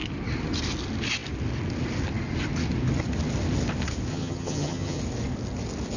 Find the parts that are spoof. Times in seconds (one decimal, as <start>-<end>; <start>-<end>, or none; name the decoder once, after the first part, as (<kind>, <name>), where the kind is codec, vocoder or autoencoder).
4.1-5.0 (vocoder, HiFi-GAN)